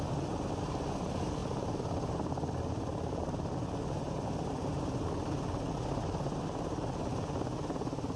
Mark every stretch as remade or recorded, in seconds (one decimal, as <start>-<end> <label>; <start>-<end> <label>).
0.0-8.2 recorded